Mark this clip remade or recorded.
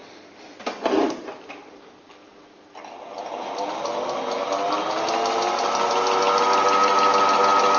recorded